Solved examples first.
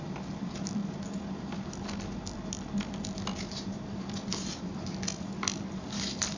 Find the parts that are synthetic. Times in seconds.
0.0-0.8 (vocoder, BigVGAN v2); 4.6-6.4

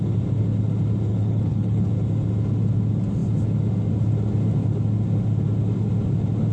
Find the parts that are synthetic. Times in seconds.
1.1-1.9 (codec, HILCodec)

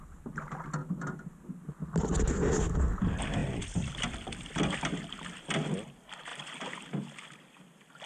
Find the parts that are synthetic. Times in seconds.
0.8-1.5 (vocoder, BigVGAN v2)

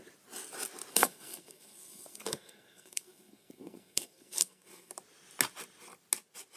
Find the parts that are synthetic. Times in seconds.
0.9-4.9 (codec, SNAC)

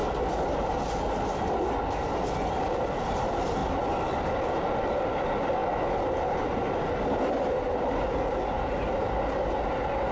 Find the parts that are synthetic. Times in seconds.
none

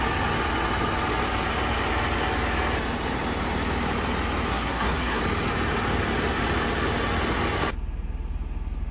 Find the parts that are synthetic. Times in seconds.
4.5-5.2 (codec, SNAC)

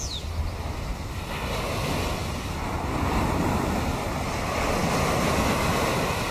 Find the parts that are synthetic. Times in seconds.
none